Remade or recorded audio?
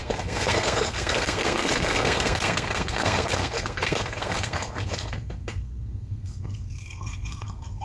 remade